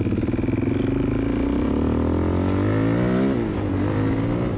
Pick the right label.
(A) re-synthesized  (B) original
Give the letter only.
B